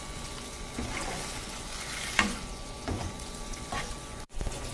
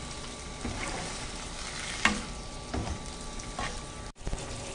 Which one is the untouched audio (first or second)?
second